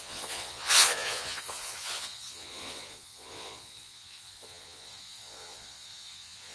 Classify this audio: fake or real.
fake